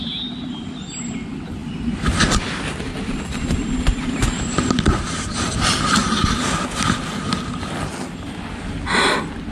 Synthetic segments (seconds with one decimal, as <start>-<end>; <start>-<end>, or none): 0.0-6.0